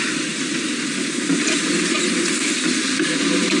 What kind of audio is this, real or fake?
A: real